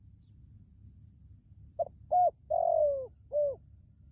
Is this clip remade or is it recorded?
recorded